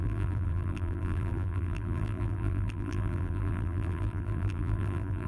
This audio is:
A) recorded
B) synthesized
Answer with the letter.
B